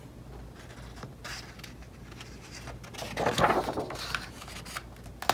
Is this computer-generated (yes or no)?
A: no